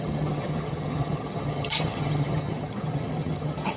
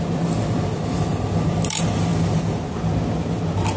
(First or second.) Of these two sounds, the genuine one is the second